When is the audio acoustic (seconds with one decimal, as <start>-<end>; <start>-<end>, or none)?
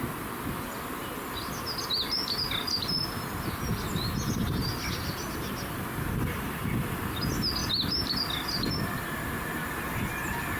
0.0-10.6